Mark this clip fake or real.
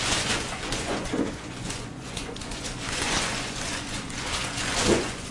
fake